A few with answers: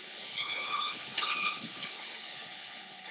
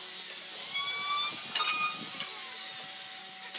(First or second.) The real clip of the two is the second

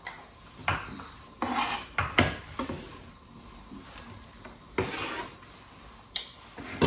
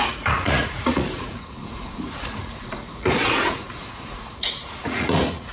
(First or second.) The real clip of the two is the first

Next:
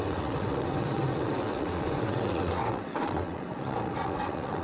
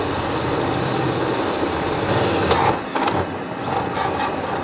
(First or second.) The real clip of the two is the second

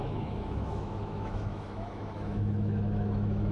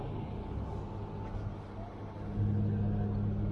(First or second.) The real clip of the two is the second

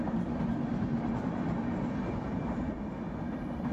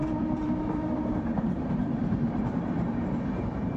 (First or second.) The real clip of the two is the first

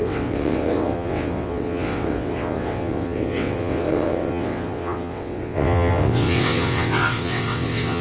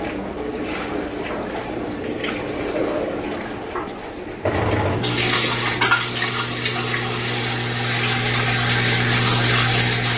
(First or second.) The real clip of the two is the second